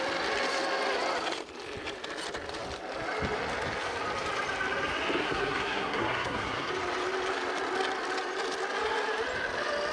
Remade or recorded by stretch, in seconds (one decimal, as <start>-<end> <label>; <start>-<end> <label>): 0.0-5.2 recorded; 5.2-6.7 remade; 6.7-9.9 recorded